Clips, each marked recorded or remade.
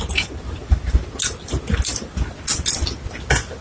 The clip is recorded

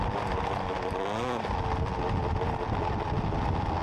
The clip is recorded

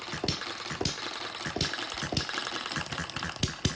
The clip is recorded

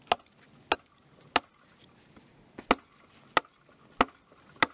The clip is recorded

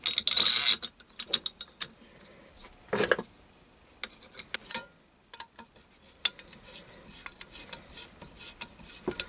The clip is recorded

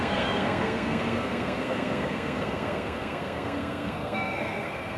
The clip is remade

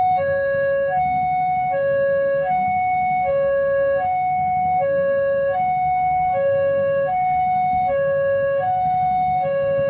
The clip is remade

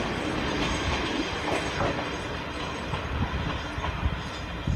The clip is recorded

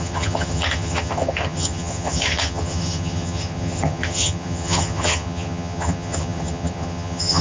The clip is remade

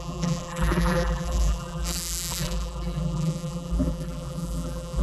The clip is remade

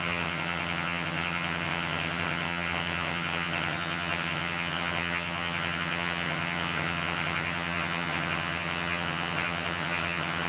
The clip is remade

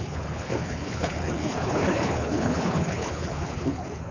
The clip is remade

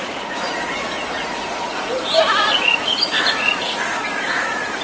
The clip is remade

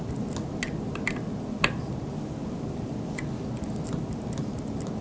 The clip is recorded